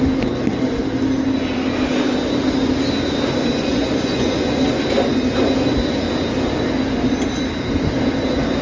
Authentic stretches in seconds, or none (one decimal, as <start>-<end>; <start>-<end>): 0.0-3.5; 4.5-8.6